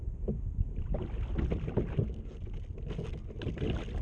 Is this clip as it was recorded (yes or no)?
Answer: yes